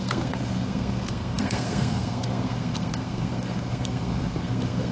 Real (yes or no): no